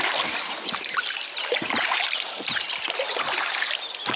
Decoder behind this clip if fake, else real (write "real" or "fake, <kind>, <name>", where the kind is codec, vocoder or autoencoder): real